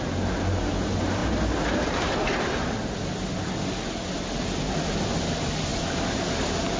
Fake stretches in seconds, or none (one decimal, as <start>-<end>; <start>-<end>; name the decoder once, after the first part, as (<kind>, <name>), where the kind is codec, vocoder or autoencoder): none